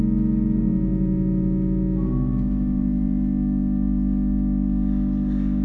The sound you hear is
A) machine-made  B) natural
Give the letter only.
B